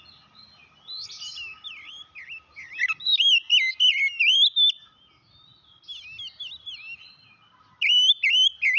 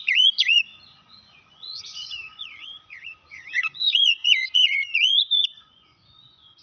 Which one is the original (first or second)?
first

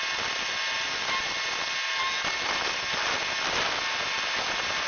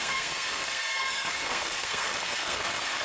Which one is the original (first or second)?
first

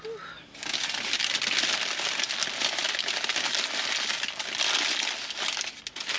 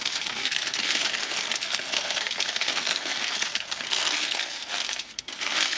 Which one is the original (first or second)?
first